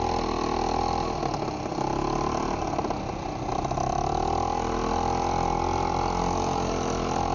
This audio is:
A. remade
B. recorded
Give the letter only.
B